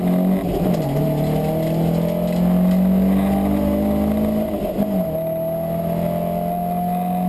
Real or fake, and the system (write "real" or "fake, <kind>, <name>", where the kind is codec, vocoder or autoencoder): real